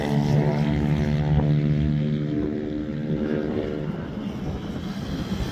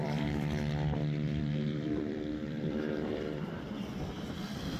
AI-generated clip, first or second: second